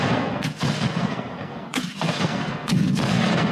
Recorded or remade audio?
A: remade